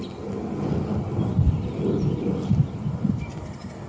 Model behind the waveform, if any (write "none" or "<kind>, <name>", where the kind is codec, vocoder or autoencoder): none